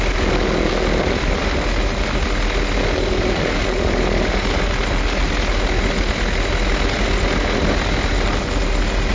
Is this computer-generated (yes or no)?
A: no